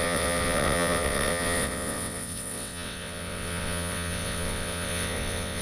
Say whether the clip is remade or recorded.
remade